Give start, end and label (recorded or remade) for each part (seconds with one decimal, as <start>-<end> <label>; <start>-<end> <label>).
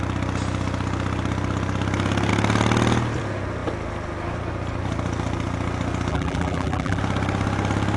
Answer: 0.0-6.1 recorded; 6.1-7.0 remade; 7.0-8.0 recorded